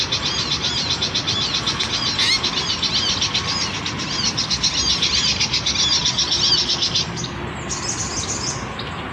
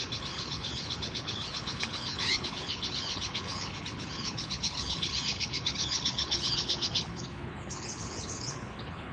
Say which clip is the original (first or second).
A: first